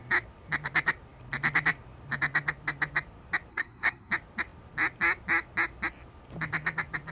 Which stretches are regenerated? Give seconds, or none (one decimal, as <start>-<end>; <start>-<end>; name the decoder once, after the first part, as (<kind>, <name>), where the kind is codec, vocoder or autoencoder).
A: 3.5-4.1 (codec, SNAC)